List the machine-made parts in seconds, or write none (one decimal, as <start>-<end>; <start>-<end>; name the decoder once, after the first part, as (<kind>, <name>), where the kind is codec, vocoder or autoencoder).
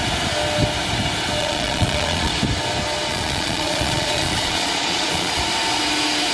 1.4-2.3 (vocoder, Vocos); 3.1-5.4